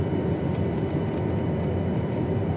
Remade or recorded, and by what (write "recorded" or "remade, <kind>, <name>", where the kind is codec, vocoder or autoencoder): recorded